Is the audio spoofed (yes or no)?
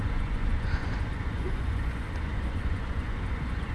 yes